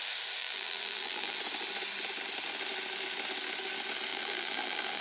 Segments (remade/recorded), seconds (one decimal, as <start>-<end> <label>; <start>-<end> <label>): 0.0-0.4 recorded; 0.4-1.4 remade; 1.4-4.1 recorded; 4.1-5.0 remade